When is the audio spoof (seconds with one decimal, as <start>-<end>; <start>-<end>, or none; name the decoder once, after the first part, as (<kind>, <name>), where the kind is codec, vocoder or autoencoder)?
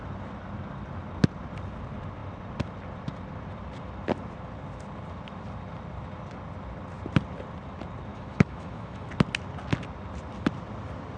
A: 8.1-9.1 (autoencoder, DAC-VAE)